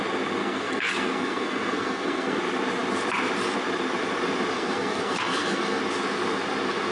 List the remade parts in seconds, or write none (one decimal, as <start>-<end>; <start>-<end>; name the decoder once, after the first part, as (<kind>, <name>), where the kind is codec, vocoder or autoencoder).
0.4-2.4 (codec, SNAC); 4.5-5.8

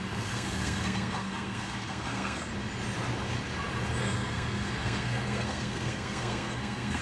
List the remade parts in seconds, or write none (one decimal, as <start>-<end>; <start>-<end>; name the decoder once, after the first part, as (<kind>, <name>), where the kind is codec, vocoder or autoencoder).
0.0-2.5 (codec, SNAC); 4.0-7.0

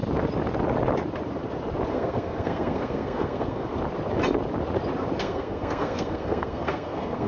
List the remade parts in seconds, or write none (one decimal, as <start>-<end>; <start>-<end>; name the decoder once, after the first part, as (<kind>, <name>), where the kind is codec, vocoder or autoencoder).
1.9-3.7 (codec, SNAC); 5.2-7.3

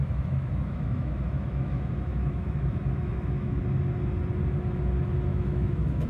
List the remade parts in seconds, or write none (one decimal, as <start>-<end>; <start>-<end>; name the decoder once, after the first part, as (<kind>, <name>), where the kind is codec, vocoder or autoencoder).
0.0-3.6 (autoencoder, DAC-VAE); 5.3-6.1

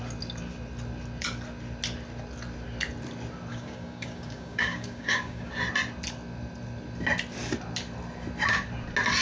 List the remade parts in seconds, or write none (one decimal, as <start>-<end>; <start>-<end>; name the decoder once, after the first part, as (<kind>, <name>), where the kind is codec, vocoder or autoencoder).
3.5-5.5 (codec, DAC)

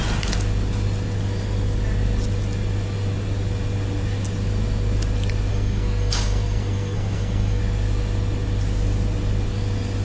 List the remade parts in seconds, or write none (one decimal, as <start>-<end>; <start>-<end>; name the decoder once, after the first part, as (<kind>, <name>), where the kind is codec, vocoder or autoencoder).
5.5-7.6 (codec, SNAC)

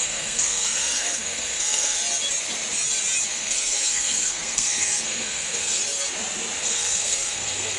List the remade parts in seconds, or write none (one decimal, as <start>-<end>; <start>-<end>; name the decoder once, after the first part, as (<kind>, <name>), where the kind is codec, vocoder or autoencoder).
0.0-2.0 (codec, SNAC); 3.3-5.8; 6.6-7.8

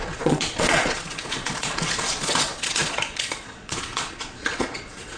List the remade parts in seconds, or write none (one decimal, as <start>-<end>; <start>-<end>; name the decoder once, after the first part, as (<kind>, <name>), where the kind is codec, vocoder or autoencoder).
0.0-5.2 (vocoder, Vocos)